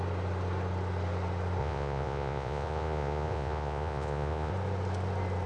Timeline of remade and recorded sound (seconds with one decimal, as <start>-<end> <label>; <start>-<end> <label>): 0.0-1.6 recorded; 1.6-4.5 remade; 4.5-5.5 recorded